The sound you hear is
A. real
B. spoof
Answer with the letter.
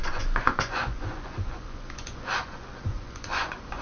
B